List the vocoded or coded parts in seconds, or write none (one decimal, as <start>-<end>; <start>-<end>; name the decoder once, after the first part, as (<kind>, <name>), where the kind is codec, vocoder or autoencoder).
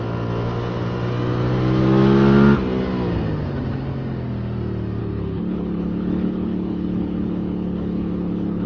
5.0-8.7 (codec, HILCodec)